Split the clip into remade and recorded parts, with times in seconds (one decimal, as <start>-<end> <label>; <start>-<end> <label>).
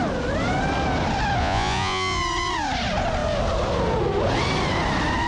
0.0-1.4 recorded; 1.4-2.2 remade; 2.2-5.3 recorded